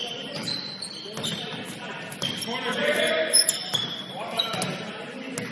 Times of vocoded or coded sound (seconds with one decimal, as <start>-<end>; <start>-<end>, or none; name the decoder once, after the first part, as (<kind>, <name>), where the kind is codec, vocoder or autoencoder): 2.8-4.5 (vocoder, BigVGAN v2)